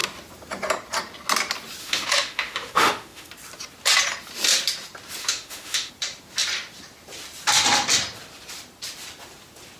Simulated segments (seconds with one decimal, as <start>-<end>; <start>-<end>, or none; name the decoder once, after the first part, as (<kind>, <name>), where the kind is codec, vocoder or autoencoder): 1.8-3.3 (autoencoder, DAC-VAE); 5.2-5.9